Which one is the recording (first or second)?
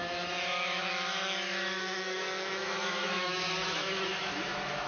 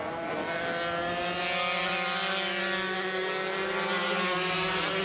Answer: second